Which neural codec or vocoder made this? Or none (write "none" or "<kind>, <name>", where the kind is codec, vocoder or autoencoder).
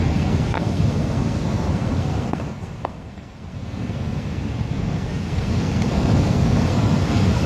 codec, SNAC